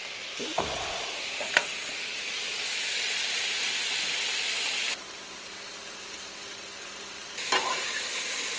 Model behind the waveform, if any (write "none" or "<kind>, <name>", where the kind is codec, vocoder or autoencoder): none